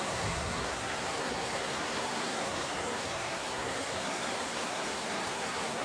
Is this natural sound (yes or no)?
no